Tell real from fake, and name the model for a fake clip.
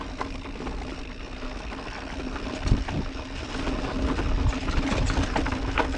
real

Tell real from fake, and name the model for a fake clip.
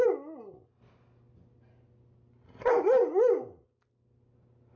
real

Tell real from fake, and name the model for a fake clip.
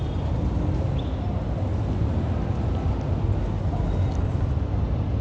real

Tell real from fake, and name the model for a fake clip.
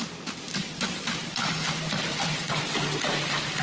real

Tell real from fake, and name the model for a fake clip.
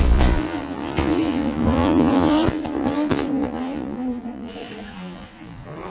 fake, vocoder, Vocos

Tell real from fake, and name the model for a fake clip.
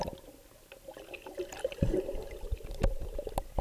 real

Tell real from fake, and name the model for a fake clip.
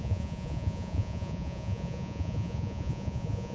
fake, vocoder, Vocos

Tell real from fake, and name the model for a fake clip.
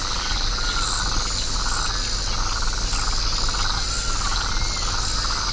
real